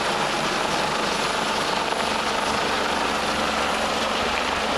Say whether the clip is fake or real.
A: real